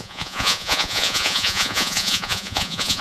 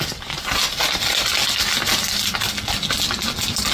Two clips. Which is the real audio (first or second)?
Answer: second